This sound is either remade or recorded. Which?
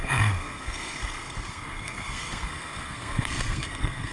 remade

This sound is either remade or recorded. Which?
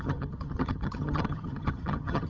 remade